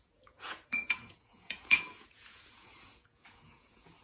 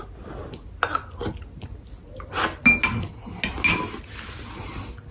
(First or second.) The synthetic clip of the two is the first